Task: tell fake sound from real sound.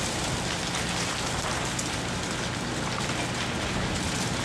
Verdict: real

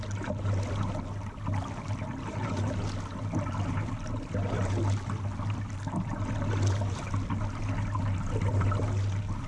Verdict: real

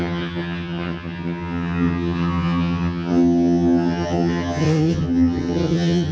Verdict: fake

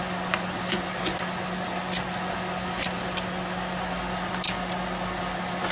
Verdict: real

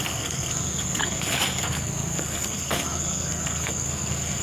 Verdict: fake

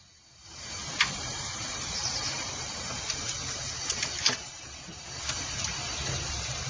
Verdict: fake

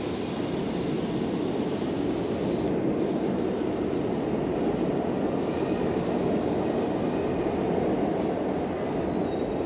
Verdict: real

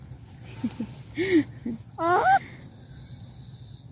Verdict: real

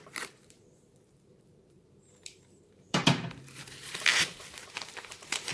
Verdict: fake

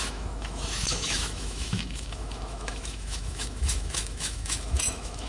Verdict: fake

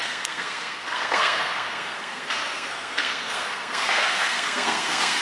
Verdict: fake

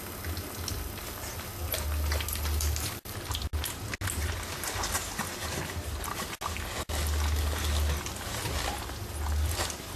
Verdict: real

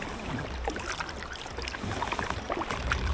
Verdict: real